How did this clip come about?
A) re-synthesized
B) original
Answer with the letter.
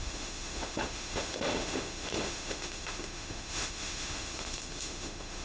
A